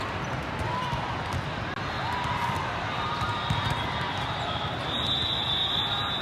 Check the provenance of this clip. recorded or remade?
recorded